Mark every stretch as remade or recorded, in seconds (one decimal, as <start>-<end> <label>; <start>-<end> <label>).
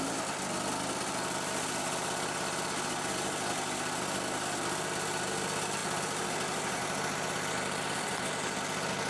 0.0-9.1 recorded